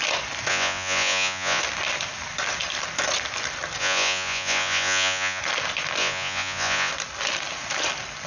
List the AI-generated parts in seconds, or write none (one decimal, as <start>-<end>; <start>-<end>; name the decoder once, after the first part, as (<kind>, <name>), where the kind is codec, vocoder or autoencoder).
0.5-1.6 (vocoder, Vocos); 3.8-5.4; 6.0-6.9